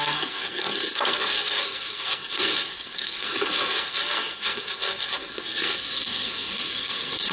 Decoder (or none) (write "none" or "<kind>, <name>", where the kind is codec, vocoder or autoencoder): codec, SNAC